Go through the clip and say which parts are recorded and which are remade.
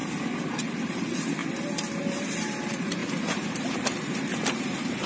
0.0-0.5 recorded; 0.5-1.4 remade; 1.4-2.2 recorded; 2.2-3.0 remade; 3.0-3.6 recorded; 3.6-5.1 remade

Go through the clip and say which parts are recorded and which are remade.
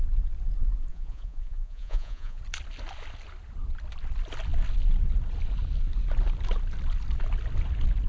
0.0-0.9 recorded; 0.9-2.4 remade; 2.4-8.1 recorded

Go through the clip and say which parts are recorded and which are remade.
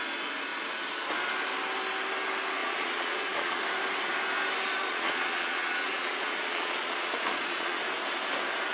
0.0-2.6 recorded; 2.6-3.6 remade; 3.6-4.9 recorded; 4.9-7.8 remade; 7.8-8.7 recorded